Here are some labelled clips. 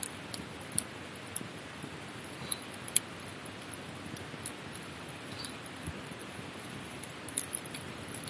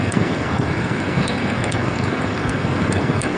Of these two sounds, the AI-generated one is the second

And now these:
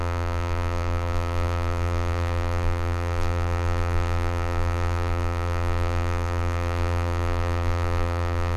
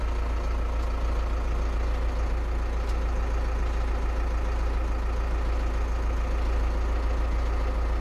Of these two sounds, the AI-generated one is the first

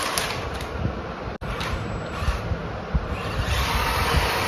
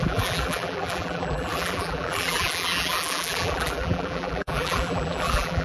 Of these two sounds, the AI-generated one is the second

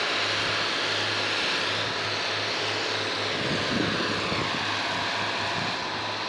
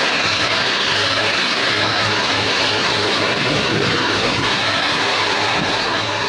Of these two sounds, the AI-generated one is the second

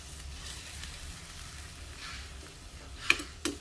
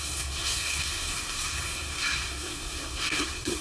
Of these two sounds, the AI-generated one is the second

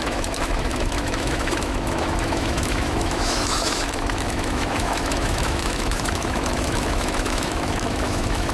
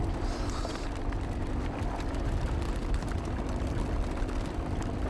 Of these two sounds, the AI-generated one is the first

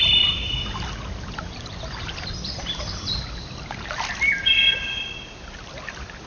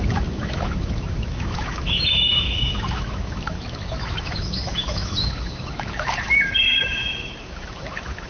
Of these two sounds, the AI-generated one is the second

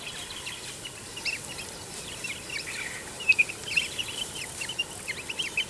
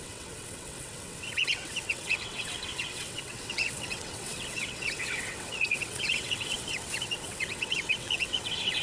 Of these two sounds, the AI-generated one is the second